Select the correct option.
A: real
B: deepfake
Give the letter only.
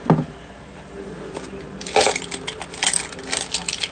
A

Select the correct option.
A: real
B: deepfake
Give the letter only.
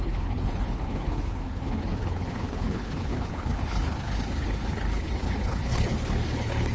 B